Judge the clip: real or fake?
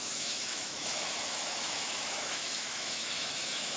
fake